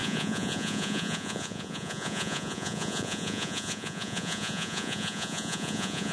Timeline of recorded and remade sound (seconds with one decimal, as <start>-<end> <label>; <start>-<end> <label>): 0.0-6.1 remade